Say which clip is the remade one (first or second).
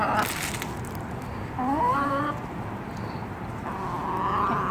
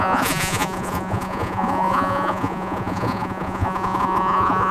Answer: second